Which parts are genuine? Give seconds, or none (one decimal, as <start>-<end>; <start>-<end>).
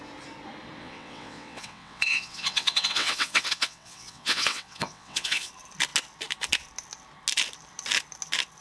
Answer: 0.0-0.8; 5.5-8.6